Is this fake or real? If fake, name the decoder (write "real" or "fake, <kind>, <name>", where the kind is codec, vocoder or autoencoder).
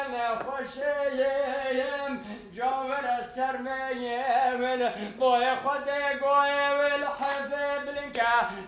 real